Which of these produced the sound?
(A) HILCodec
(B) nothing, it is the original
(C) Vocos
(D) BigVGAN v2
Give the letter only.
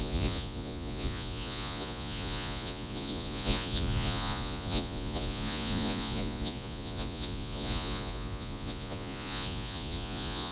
C